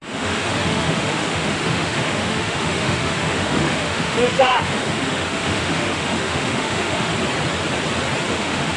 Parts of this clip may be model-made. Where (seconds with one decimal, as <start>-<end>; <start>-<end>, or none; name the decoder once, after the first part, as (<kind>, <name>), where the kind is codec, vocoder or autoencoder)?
0.0-7.1 (autoencoder, DAC-VAE); 8.3-8.8